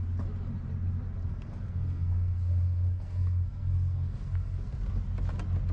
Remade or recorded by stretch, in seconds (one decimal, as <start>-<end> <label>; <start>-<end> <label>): 0.0-1.3 recorded; 1.3-4.7 remade; 4.7-5.7 recorded